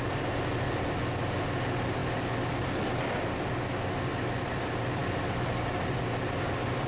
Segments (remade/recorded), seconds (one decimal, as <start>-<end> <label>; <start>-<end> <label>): 0.0-6.9 recorded